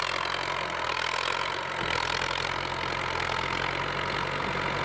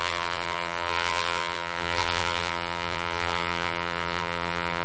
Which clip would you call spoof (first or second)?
second